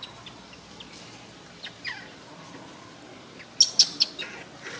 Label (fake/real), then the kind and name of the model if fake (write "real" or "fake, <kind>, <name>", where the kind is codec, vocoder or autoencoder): real